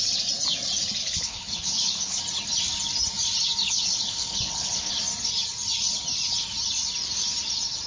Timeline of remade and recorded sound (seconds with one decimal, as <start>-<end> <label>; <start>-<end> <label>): 0.0-1.0 recorded; 1.0-2.2 remade; 2.2-3.6 recorded; 3.6-4.9 remade; 4.9-7.9 recorded